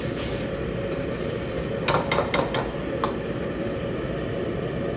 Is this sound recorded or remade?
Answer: recorded